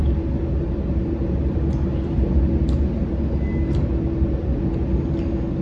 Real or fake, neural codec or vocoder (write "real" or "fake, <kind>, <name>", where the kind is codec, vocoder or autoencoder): real